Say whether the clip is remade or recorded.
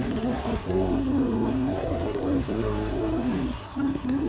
remade